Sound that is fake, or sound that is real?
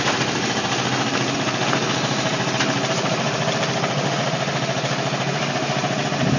real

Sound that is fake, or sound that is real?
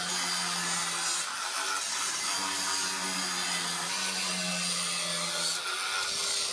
real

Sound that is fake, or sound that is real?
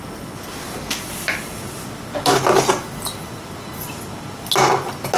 real